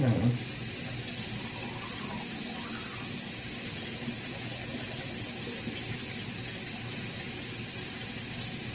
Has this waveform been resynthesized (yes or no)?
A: no